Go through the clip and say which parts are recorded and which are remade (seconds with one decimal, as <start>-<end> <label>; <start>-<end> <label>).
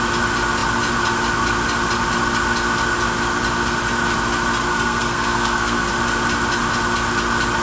0.0-4.7 recorded; 4.7-5.9 remade; 5.9-7.6 recorded